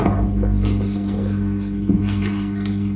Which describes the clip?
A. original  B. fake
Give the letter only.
B